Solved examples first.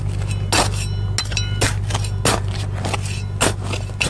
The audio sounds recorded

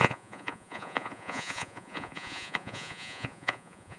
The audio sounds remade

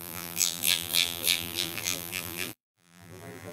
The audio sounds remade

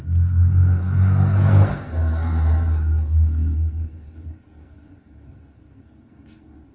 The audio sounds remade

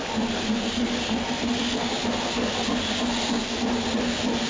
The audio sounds recorded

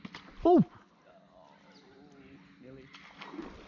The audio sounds recorded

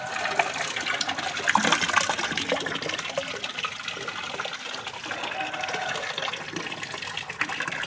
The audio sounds recorded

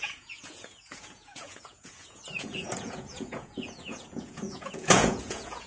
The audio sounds remade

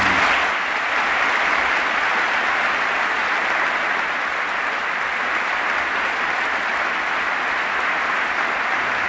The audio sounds recorded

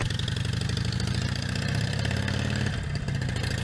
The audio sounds recorded